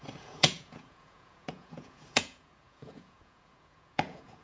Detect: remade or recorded remade